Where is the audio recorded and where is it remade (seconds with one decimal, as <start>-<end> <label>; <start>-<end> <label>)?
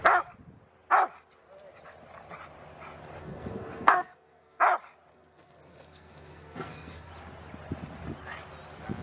0.0-3.2 recorded; 3.2-4.6 remade; 4.6-5.1 recorded; 5.1-7.1 remade; 7.1-9.0 recorded